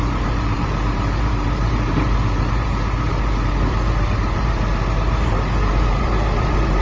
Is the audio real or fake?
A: fake